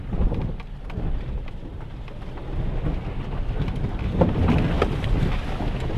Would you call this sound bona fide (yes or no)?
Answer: yes